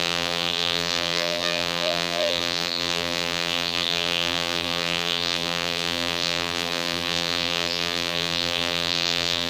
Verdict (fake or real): fake